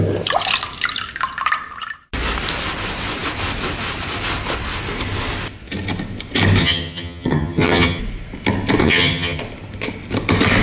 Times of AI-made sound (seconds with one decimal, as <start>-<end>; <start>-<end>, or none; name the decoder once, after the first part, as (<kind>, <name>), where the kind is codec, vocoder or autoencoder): 6.6-8.0 (vocoder, HiFi-GAN); 8.8-9.4